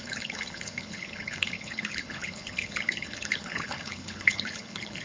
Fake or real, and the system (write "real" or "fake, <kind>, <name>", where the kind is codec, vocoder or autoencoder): fake, codec, HILCodec